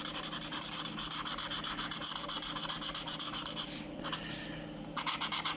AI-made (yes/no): yes